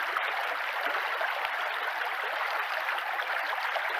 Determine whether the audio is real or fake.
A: real